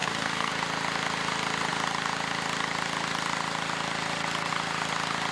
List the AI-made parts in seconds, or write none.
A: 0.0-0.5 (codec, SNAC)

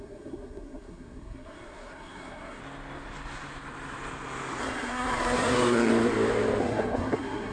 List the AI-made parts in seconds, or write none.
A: 0.0-2.6 (codec, SNAC); 4.6-5.9; 6.6-7.5

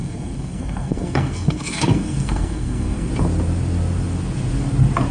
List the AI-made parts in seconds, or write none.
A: 0.0-3.1 (codec, SNAC)

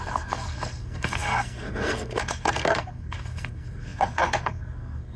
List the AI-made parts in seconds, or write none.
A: 0.0-5.2 (codec, SNAC)

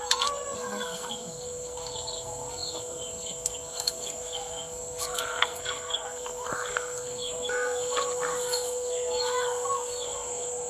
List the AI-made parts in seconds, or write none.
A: 0.0-10.7 (codec, SNAC)

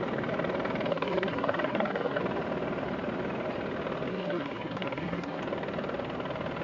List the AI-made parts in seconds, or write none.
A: 0.9-2.2 (codec, SNAC); 4.1-5.4